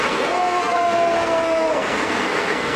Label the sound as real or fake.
fake